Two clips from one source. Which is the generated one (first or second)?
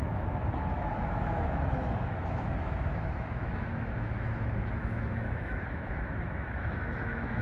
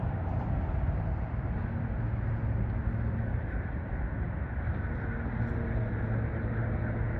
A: first